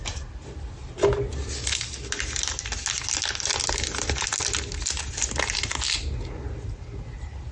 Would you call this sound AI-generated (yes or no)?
no